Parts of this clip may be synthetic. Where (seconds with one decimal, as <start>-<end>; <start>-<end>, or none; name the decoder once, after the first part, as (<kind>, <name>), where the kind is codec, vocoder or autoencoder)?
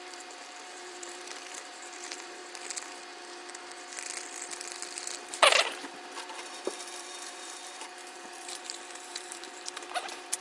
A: 0.0-2.4 (vocoder, BigVGAN v2); 5.7-10.4